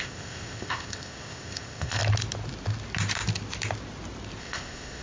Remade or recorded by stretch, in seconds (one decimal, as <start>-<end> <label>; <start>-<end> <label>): 0.0-2.0 remade; 2.0-4.4 recorded; 4.4-5.0 remade